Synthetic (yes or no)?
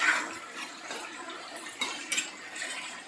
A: yes